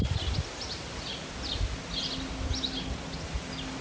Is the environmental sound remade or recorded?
recorded